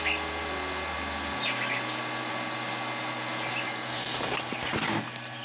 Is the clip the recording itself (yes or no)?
yes